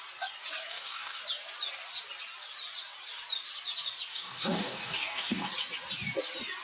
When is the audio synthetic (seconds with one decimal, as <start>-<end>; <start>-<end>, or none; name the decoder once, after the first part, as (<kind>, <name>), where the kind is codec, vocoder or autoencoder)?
0.7-1.2 (codec, DAC); 4.1-5.5